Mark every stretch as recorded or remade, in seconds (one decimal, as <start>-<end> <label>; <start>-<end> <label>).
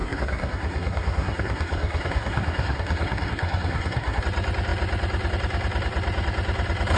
0.0-4.2 remade; 4.2-7.0 recorded